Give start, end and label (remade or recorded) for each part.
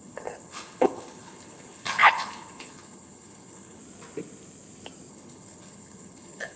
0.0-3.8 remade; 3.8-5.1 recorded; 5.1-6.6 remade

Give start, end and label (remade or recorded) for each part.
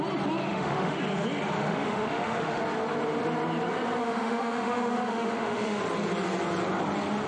0.0-0.5 recorded; 0.5-1.0 remade; 1.0-1.6 recorded; 1.6-2.6 remade; 2.6-4.0 recorded; 4.0-5.8 remade; 5.8-7.3 recorded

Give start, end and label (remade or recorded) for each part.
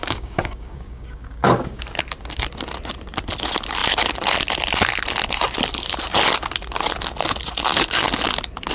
0.0-1.8 remade; 1.8-8.7 recorded